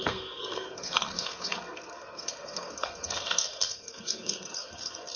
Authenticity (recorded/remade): remade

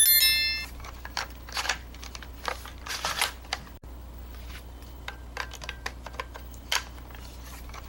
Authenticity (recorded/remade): recorded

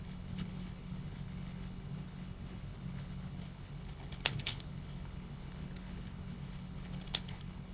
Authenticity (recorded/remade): remade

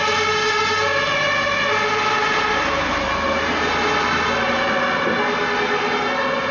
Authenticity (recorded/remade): recorded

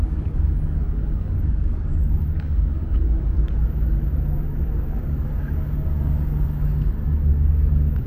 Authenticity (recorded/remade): remade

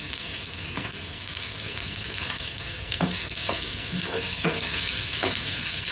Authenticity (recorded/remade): remade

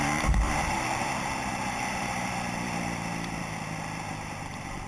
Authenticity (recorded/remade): remade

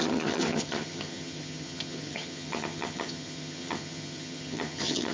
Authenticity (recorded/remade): remade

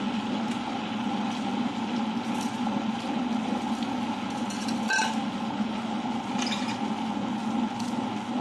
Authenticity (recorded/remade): recorded